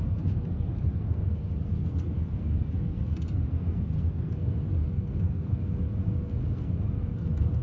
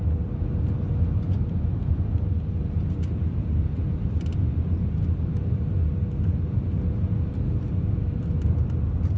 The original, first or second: second